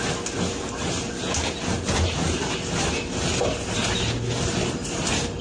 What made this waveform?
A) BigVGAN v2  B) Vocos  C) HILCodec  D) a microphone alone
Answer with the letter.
D